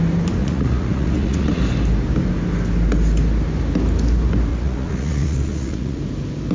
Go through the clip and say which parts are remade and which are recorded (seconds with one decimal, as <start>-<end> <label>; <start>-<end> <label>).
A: 0.0-0.4 recorded; 0.4-1.6 remade; 1.6-4.5 recorded; 4.5-6.0 remade; 6.0-6.5 recorded